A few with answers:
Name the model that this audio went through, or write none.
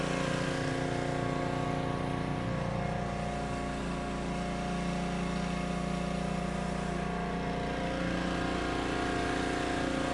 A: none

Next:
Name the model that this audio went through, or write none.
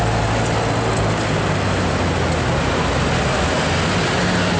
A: none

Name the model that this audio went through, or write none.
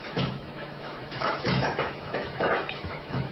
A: autoencoder, DAC-VAE